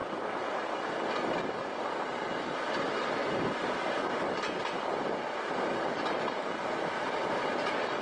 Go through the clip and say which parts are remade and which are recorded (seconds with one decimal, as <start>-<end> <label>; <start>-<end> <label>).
0.0-8.0 recorded